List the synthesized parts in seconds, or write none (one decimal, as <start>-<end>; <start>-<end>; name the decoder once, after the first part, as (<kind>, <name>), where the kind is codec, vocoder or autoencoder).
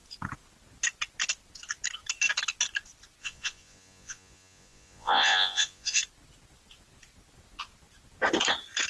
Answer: 3.2-6.0 (vocoder, Vocos)